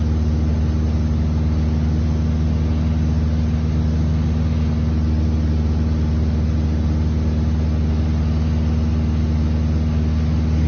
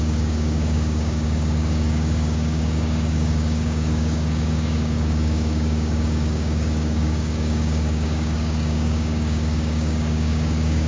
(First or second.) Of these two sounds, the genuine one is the first